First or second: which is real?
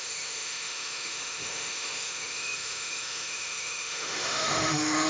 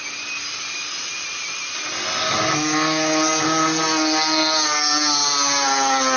second